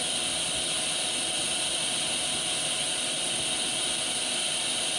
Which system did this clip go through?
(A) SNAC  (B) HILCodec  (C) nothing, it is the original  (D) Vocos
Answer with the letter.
C